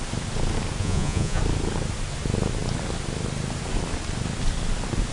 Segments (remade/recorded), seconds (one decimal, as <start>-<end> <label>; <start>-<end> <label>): 0.0-0.8 recorded; 0.8-1.4 remade; 1.4-5.1 recorded